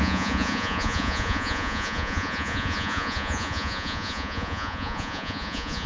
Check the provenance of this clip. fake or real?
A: fake